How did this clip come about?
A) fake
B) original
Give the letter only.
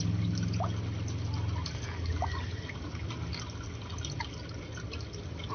B